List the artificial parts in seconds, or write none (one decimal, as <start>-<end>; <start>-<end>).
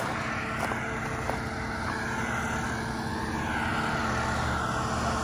none